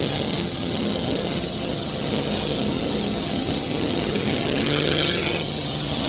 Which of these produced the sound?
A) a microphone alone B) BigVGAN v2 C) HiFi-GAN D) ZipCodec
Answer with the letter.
C